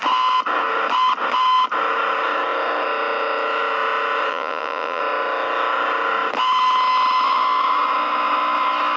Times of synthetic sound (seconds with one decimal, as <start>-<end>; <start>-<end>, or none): 4.3-5.0